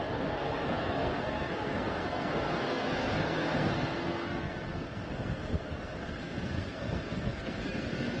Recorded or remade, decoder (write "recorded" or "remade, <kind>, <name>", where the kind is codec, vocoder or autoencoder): remade, codec, SNAC